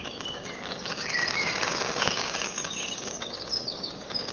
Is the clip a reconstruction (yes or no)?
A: yes